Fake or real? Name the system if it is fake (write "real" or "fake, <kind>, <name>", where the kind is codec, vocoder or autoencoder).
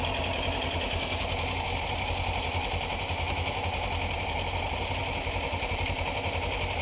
real